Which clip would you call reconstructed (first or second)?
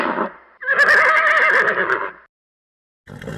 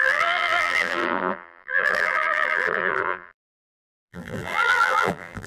second